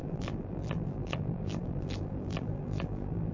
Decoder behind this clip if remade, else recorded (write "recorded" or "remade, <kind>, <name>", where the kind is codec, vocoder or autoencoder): remade, vocoder, BigVGAN v2